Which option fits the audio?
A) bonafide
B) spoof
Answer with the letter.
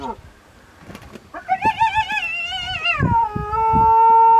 A